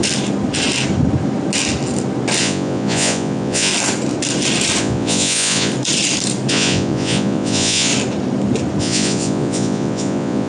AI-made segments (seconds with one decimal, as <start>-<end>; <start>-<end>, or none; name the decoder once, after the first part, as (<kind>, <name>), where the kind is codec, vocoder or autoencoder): 2.4-3.7 (vocoder, Vocos); 4.8-5.7; 6.5-7.9; 8.8-10.5